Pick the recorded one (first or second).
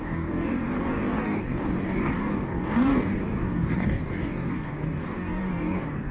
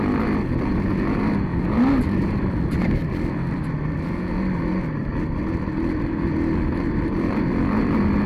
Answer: second